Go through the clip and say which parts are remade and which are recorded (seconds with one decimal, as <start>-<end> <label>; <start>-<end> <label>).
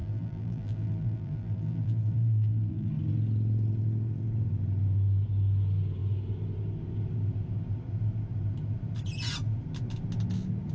0.0-2.9 remade; 2.9-10.7 recorded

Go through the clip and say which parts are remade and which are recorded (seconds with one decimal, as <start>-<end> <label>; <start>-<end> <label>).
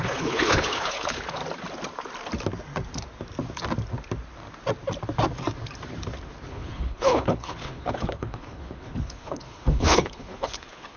0.0-1.4 remade; 1.4-6.5 recorded; 6.5-11.0 remade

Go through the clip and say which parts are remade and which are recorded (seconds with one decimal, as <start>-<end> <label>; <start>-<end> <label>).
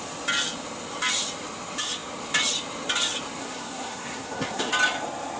0.0-3.4 recorded; 3.4-4.7 remade; 4.7-5.4 recorded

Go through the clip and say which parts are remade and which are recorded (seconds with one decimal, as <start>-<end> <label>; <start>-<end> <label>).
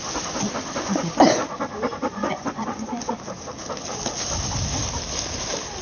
0.0-2.0 recorded; 2.0-3.1 remade; 3.1-5.8 recorded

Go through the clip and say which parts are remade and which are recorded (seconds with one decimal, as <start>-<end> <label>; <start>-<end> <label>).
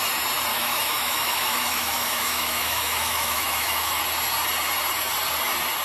0.0-0.5 recorded; 0.5-4.0 remade; 4.0-5.8 recorded